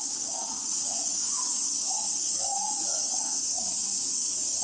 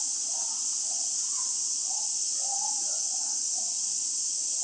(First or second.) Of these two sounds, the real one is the second